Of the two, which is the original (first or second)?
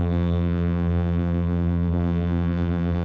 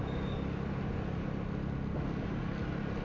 second